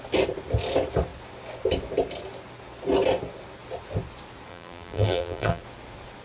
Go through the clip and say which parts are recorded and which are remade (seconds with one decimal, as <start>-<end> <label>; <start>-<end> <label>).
0.0-4.5 recorded; 4.5-5.6 remade; 5.6-6.2 recorded